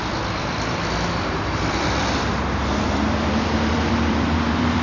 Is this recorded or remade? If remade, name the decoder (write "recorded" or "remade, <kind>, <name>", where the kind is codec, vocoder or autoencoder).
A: remade, vocoder, BigVGAN v2